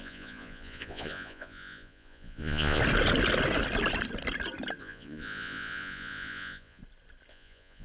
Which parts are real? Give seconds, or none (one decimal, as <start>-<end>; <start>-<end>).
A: 2.8-4.8; 6.8-7.3